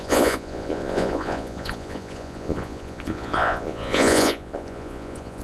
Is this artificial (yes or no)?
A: yes